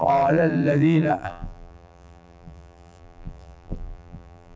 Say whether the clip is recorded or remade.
remade